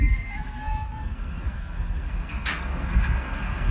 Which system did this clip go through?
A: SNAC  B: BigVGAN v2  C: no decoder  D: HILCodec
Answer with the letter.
A